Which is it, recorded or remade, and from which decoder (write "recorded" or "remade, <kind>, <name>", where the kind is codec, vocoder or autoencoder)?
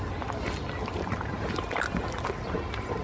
recorded